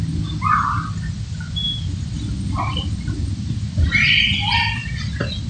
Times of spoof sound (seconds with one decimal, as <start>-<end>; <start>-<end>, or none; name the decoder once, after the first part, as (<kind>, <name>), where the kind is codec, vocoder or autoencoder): 1.6-4.2 (vocoder, BigVGAN v2)